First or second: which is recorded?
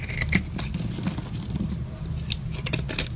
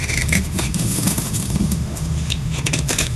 first